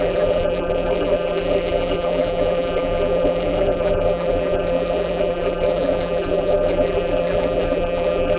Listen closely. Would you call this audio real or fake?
fake